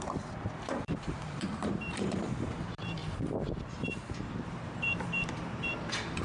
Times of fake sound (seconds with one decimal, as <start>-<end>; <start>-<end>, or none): 0.0-3.0; 4.8-6.2